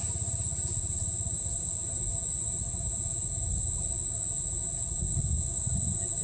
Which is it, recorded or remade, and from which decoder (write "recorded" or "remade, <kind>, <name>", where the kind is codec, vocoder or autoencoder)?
recorded